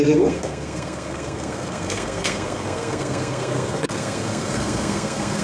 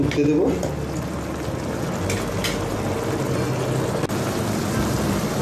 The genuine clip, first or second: second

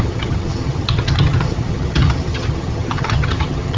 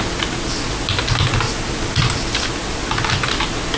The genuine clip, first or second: second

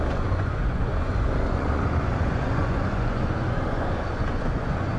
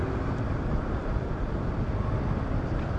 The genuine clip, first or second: second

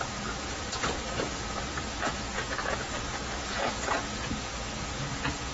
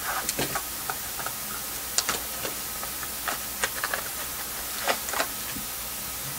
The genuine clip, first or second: second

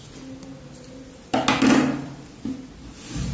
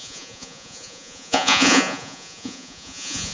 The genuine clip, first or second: first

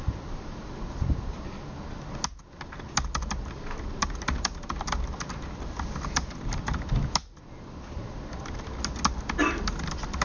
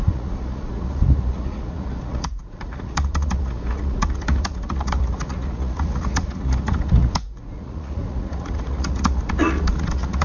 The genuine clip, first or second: first